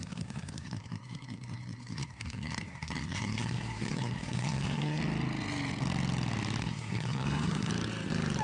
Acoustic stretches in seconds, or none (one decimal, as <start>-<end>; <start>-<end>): 5.0-6.6; 7.7-8.4